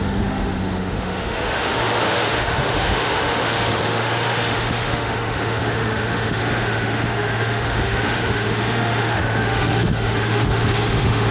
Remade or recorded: remade